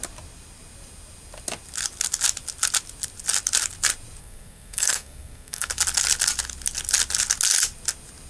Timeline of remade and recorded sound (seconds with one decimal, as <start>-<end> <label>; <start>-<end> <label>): 0.0-4.2 recorded; 4.2-5.7 remade; 5.7-8.3 recorded